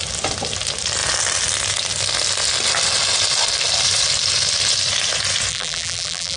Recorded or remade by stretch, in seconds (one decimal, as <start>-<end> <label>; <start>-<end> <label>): 0.0-5.5 recorded; 5.5-6.4 remade